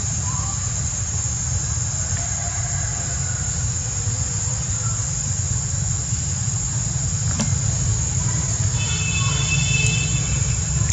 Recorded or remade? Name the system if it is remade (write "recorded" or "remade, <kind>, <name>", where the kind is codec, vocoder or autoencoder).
recorded